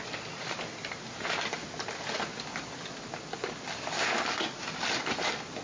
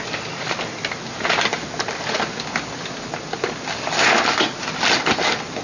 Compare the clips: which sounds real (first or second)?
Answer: second